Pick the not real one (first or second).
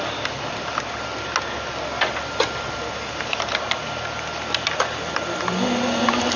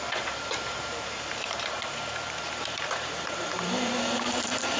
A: second